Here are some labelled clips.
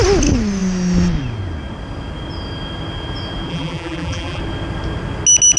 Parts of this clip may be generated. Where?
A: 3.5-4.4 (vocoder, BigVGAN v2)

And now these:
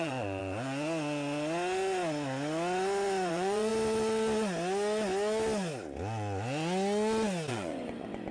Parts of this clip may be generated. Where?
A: 0.0-0.4 (vocoder, Vocos); 3.3-3.7; 7.5-8.3